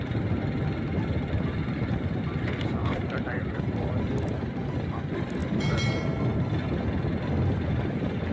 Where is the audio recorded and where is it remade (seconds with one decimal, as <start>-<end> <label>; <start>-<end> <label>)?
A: 0.0-2.8 recorded; 2.8-3.6 remade; 3.6-5.4 recorded; 5.4-6.2 remade; 6.2-8.3 recorded